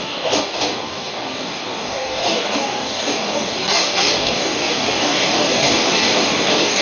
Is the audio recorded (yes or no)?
no